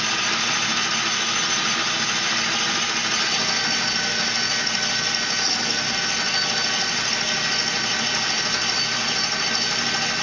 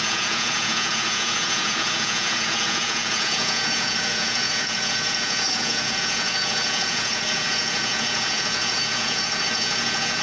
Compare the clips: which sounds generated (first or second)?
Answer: second